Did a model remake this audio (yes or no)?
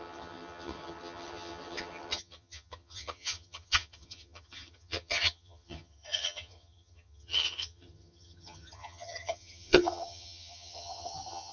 yes